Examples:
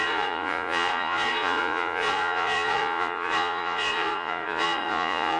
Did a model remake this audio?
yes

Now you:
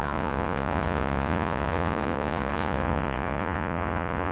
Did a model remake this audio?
yes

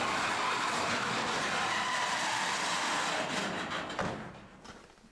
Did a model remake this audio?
no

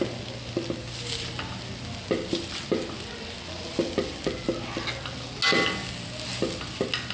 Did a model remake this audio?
no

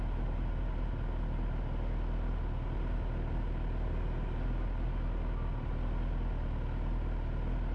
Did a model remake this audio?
no